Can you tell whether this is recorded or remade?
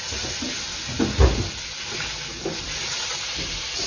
recorded